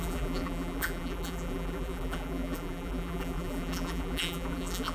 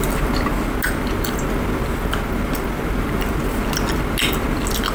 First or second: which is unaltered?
second